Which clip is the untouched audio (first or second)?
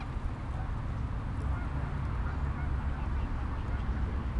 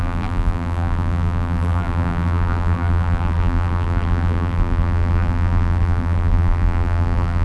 first